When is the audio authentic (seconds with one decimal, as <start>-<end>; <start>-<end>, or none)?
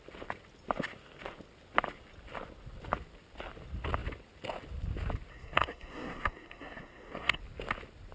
0.0-5.3; 7.4-8.1